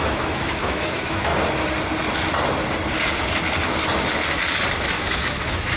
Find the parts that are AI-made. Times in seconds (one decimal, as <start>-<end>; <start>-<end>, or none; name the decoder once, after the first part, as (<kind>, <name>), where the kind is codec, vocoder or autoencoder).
0.0-1.3 (autoencoder, DAC-VAE); 4.8-5.8